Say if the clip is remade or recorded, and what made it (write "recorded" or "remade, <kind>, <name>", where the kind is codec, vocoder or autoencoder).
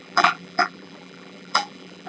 remade, vocoder, BigVGAN v2